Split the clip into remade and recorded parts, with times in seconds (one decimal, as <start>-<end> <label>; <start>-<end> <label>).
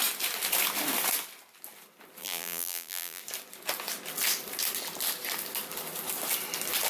0.0-2.2 recorded; 2.2-3.2 remade; 3.2-6.9 recorded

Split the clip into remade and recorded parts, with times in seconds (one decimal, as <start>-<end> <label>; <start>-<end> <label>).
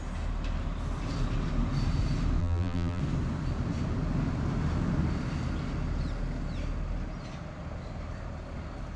0.0-2.4 recorded; 2.4-3.0 remade; 3.0-9.0 recorded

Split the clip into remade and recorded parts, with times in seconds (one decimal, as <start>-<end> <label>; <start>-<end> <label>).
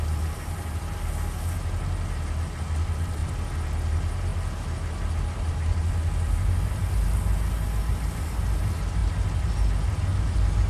0.0-10.7 recorded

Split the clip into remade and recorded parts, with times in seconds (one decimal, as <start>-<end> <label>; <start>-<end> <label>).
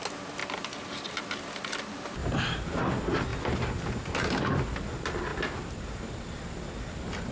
0.0-2.2 recorded; 2.2-2.8 remade; 2.8-3.3 recorded; 3.3-4.4 remade; 4.4-5.3 recorded; 5.3-6.2 remade; 6.2-7.3 recorded